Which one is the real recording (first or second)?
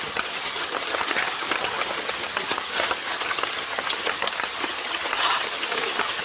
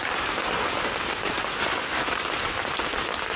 second